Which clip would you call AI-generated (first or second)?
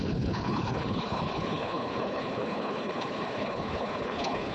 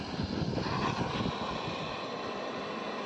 first